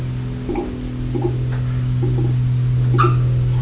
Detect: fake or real real